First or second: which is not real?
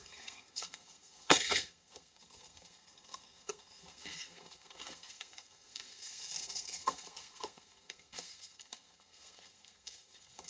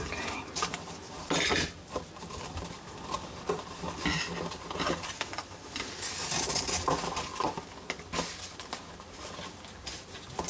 first